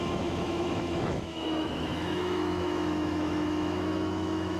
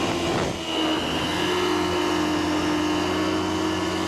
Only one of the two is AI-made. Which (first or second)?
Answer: first